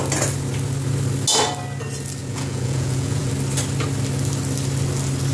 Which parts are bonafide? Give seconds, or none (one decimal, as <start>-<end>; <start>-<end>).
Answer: 0.0-2.2; 3.3-5.3